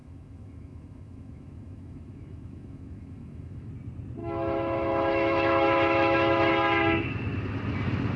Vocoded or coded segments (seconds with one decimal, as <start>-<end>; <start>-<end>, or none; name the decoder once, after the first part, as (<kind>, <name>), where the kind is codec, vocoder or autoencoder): 0.0-3.7 (autoencoder, DAC-VAE); 4.2-6.5